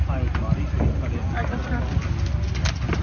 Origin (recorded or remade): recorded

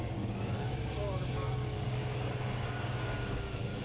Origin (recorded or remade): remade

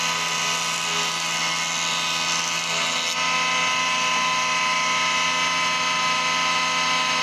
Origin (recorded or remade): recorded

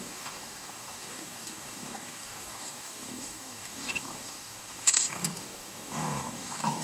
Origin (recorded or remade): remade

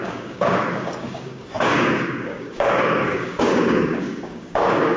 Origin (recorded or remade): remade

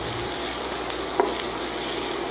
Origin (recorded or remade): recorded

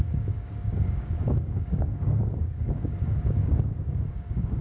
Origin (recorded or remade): remade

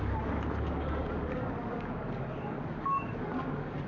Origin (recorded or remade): remade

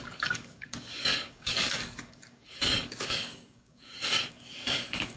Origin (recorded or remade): remade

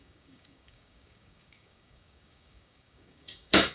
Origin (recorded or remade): remade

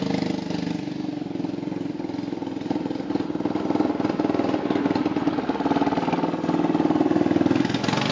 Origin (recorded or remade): recorded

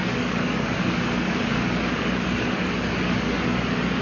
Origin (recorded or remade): remade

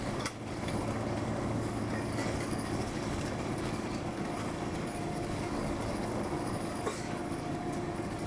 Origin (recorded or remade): remade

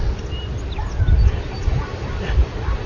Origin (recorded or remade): recorded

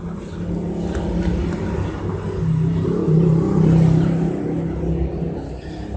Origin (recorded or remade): recorded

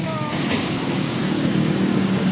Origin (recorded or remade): remade